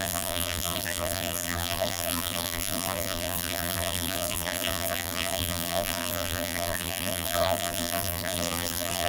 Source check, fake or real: fake